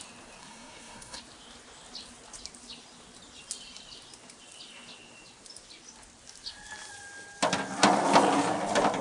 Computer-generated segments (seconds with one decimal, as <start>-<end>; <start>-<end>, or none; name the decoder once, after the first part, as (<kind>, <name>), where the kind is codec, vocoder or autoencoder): 0.4-1.2 (codec, SNAC)